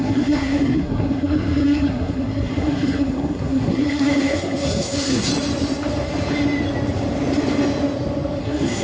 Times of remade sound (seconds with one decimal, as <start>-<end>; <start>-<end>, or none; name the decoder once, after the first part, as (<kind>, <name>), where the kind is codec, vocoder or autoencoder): 0.0-5.3 (codec, SNAC); 8.4-8.8